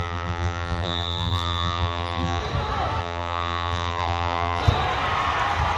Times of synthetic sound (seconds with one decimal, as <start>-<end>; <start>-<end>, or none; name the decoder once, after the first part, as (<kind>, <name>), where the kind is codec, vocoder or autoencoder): 0.0-2.4 (vocoder, BigVGAN v2); 3.0-4.6